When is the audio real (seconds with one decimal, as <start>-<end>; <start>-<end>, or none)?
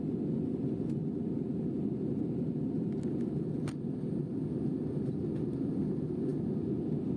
0.0-7.2